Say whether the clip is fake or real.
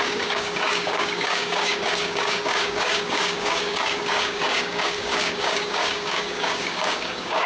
fake